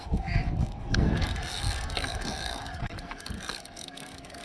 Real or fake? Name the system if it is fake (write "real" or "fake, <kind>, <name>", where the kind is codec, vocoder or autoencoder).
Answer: fake, codec, SNAC